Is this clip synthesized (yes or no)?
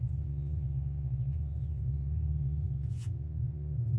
yes